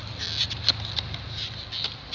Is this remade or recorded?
recorded